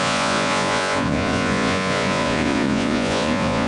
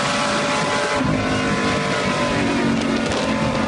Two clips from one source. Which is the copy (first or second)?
first